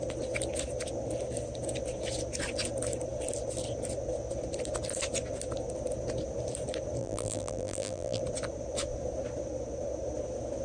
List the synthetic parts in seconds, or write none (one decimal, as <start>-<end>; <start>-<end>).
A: 7.0-8.2